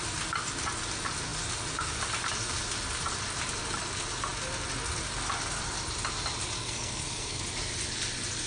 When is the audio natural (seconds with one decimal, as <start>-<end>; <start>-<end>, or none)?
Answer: 0.0-6.6; 7.4-8.5